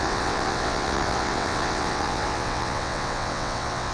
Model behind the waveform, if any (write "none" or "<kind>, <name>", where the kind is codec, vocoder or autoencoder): vocoder, WaveNeXt